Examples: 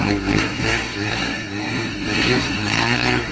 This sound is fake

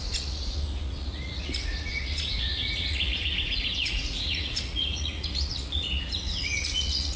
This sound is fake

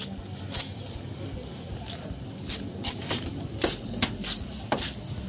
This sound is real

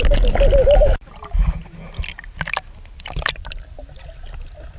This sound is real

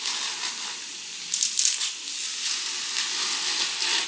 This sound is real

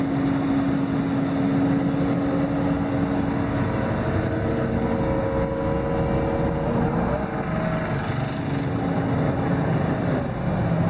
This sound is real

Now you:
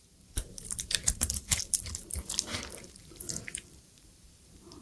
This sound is fake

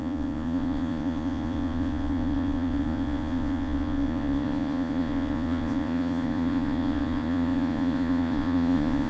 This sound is fake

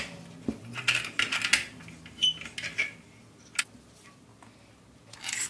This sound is real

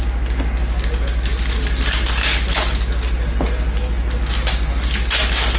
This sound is real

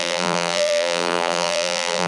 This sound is fake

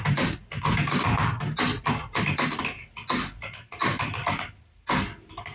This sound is real